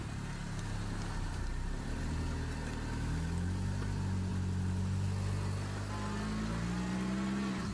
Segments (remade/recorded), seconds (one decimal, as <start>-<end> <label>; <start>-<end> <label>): 0.0-7.7 recorded